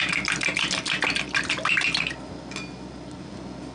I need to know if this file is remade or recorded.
recorded